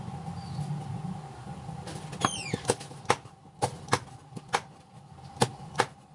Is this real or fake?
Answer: real